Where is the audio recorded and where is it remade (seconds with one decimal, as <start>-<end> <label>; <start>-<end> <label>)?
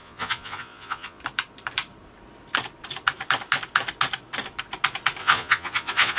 0.0-1.2 remade; 1.2-5.2 recorded; 5.2-6.2 remade